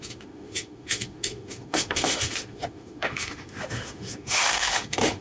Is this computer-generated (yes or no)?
yes